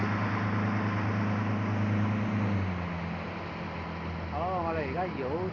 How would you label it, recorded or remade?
recorded